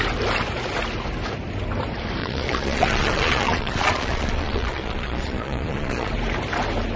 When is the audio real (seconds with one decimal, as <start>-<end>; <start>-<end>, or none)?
0.0-2.2; 6.1-7.0